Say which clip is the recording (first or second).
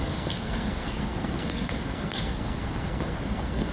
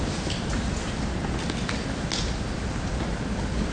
second